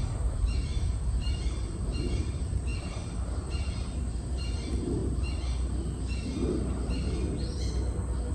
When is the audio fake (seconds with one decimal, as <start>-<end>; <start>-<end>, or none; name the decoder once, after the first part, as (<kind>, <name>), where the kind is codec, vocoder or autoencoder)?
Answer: 0.0-5.0 (vocoder, BigVGAN v2)